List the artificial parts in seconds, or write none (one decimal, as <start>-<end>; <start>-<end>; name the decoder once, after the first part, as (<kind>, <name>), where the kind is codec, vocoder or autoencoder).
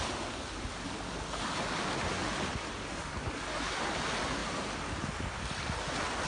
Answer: 4.4-5.4 (vocoder, BigVGAN v2)